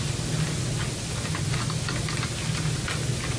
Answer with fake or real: real